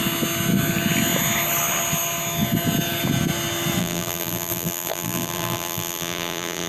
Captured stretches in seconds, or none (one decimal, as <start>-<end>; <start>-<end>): 0.0-3.8

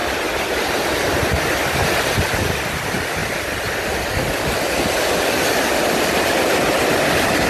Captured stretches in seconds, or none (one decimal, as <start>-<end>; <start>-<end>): 0.0-7.5

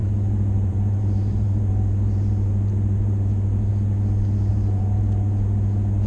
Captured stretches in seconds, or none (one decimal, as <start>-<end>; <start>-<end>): 3.7-4.5; 5.0-6.1

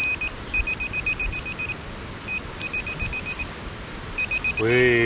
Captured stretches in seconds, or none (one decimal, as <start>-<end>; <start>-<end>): 0.0-5.1

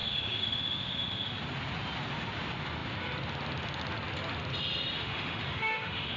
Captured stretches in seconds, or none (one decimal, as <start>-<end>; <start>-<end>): 1.4-5.0

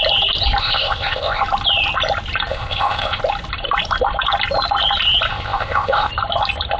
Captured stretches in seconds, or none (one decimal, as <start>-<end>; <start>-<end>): 0.0-0.6; 1.4-2.5; 3.2-5.3; 6.1-6.8

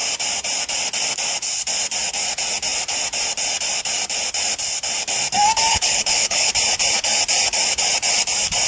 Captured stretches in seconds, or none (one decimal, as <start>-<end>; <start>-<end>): 0.0-5.7; 6.5-8.7